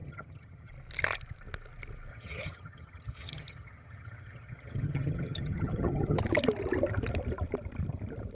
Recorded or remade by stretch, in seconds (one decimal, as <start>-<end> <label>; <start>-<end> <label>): 0.0-0.7 remade; 0.7-2.1 recorded; 2.1-6.2 remade; 6.2-8.3 recorded